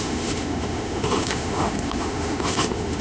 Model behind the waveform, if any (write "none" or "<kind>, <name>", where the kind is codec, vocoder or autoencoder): autoencoder, DAC-VAE